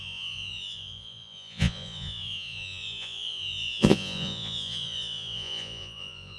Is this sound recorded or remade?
remade